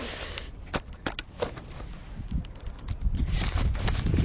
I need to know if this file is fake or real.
real